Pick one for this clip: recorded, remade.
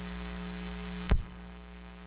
remade